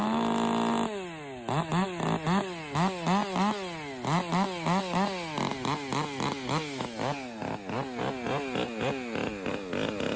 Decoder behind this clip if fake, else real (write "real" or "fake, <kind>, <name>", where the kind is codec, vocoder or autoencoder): real